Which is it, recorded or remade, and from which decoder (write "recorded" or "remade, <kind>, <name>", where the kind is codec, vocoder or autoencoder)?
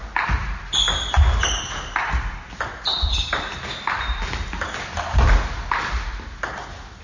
recorded